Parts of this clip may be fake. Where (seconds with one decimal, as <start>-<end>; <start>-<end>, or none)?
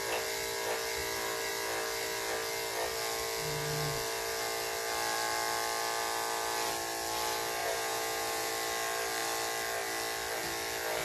7.6-8.5